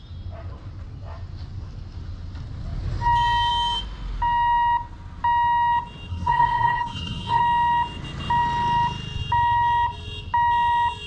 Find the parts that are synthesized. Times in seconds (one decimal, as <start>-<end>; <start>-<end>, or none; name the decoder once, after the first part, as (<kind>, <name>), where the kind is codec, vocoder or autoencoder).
6.1-7.4 (codec, SNAC)